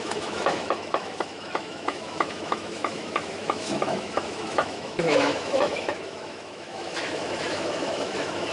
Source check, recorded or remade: remade